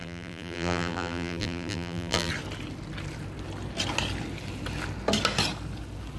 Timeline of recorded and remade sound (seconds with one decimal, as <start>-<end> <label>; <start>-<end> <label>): 0.0-2.3 remade; 2.3-6.2 recorded